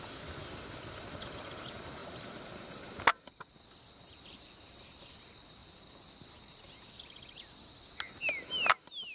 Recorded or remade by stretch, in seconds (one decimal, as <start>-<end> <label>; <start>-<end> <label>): 0.0-5.6 recorded; 5.6-6.6 remade; 6.6-9.1 recorded